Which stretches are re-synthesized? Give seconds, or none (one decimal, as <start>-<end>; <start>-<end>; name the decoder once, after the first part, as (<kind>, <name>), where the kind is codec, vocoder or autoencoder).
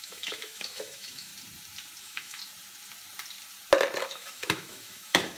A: 0.0-1.3 (autoencoder, DAC-VAE); 2.0-2.4; 4.0-5.4